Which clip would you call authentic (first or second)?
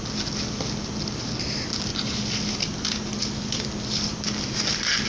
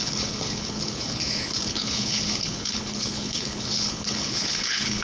first